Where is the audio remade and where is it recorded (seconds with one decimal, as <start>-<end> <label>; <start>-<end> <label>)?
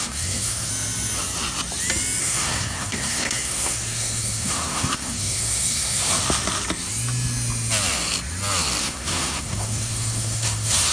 0.0-0.7 remade; 0.7-2.2 recorded; 2.2-6.2 remade; 6.2-8.8 recorded; 8.8-10.9 remade